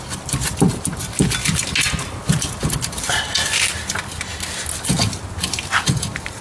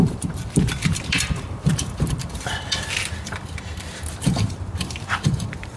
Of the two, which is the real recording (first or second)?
first